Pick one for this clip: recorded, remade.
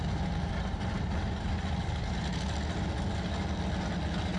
recorded